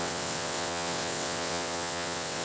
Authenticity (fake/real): fake